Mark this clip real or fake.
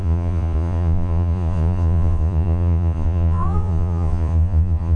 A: fake